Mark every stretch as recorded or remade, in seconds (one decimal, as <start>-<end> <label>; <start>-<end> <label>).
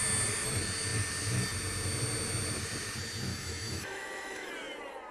0.0-3.3 recorded; 3.3-4.5 remade; 4.5-5.1 recorded